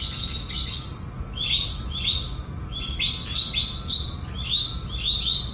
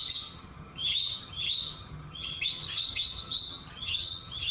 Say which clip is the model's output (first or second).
second